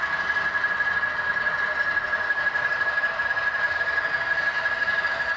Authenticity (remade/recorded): recorded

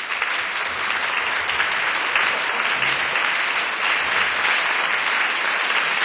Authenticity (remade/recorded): recorded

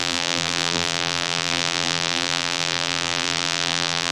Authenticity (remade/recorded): remade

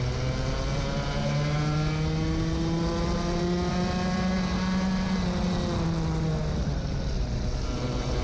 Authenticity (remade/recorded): recorded